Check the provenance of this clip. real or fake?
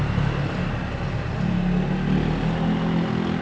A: real